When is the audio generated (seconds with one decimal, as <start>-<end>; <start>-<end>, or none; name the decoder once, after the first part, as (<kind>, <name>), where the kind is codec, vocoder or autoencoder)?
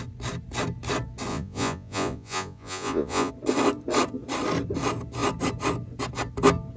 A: 1.3-3.3 (vocoder, Vocos)